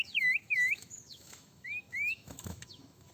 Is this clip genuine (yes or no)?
no